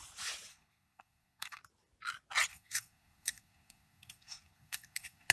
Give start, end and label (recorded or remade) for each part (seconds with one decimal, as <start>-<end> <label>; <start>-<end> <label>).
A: 0.0-0.5 recorded; 0.5-1.6 remade; 1.6-2.5 recorded; 2.5-5.3 remade